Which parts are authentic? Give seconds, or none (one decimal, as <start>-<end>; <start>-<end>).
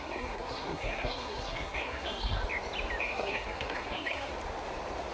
2.4-3.0; 4.3-5.1